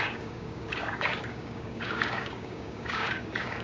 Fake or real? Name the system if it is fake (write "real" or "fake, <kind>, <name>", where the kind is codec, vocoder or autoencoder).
fake, codec, DAC